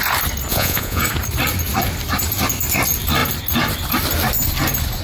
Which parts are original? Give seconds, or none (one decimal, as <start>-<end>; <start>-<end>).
0.0-0.5; 1.0-5.0

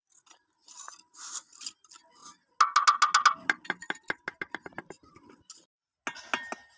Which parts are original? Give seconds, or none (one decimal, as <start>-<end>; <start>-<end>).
0.0-6.8